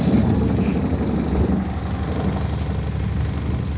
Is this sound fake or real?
real